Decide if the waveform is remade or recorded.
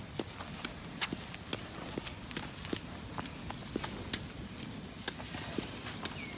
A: recorded